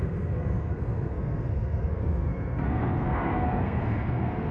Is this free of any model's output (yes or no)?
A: no